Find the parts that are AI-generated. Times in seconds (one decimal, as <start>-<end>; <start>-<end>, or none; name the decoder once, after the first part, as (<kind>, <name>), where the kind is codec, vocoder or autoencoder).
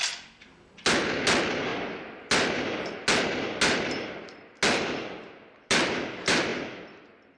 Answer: none